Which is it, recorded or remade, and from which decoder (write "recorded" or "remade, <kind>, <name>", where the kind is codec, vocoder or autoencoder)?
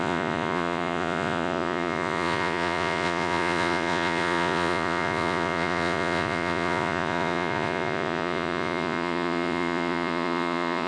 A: remade, vocoder, Vocos